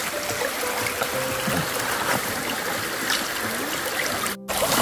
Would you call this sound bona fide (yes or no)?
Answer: yes